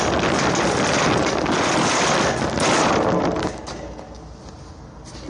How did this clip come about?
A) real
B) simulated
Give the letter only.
A